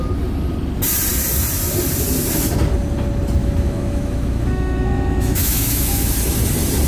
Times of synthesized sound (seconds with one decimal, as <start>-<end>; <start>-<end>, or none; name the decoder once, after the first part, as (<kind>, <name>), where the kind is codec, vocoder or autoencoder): 3.4-6.1 (autoencoder, DAC-VAE)

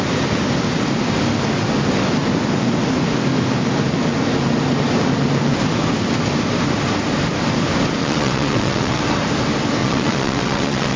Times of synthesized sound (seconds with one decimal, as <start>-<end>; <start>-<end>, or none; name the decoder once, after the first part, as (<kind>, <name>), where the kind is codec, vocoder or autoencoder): 8.0-9.0 (vocoder, WaveNeXt); 9.8-11.0

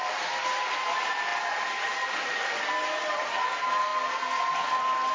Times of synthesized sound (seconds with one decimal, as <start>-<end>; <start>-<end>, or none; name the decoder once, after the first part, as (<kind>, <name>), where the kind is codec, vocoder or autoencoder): 0.0-0.6 (vocoder, BigVGAN v2)

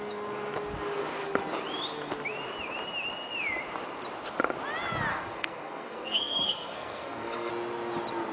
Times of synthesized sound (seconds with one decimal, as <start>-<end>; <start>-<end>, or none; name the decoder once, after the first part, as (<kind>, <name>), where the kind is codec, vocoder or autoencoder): 5.1-7.5 (codec, SNAC)

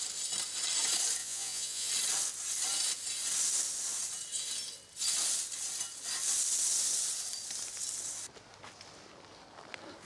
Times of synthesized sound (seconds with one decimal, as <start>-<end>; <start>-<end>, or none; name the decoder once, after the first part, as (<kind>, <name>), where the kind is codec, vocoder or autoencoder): 1.2-1.9 (vocoder, Vocos)